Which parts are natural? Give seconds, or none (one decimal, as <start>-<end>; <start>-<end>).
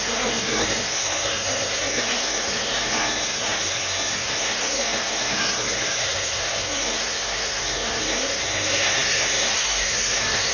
none